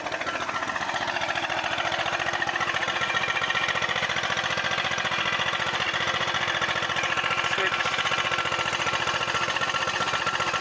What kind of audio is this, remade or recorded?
recorded